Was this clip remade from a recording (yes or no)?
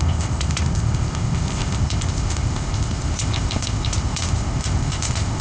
yes